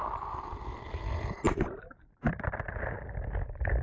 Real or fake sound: real